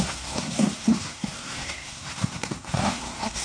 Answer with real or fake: fake